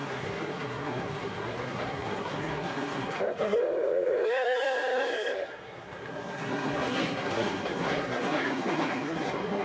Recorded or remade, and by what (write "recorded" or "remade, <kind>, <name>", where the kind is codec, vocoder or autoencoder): remade, codec, SNAC